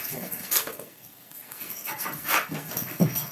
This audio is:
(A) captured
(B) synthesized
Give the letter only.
B